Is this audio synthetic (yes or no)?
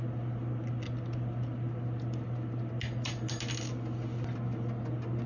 no